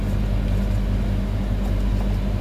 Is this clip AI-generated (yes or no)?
no